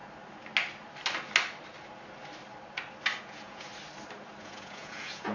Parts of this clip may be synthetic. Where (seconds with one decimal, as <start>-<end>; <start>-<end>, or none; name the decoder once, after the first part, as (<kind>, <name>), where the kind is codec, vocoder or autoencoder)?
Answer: 3.2-3.7 (vocoder, Vocos); 4.4-5.3